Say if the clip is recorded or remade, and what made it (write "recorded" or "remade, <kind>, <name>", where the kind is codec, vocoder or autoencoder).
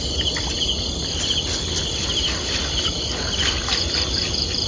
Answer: recorded